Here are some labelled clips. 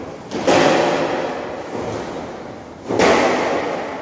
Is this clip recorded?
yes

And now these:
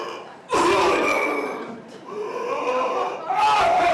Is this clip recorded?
yes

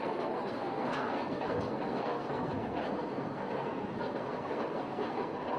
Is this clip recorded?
no